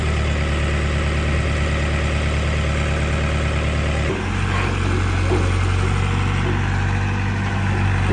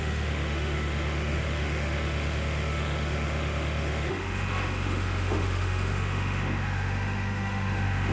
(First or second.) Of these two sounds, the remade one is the second